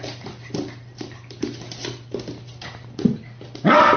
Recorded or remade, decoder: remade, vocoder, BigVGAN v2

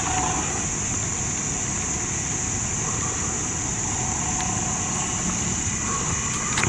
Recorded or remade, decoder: recorded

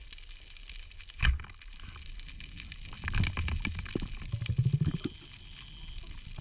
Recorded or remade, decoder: recorded